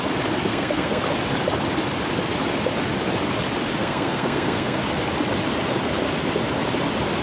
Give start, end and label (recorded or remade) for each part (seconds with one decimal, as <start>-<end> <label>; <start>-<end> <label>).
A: 0.0-0.5 recorded; 0.5-1.0 remade; 1.0-3.8 recorded; 3.8-4.8 remade; 4.8-7.2 recorded